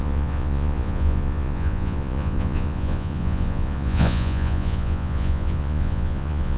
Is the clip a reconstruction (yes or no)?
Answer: yes